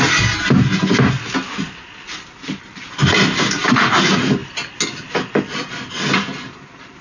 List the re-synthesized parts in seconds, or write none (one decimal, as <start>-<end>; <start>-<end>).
none